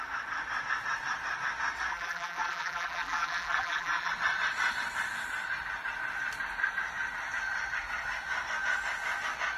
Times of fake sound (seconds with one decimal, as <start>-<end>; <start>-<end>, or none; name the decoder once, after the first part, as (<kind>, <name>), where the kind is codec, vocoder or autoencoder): 1.9-4.1 (vocoder, BigVGAN v2)